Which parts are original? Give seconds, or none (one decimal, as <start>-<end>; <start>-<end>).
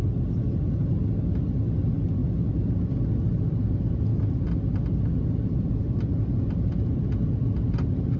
0.0-8.2